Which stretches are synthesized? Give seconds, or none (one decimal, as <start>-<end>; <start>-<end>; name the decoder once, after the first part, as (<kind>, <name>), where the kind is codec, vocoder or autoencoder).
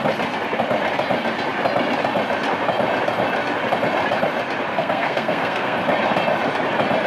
4.7-5.8 (codec, SNAC)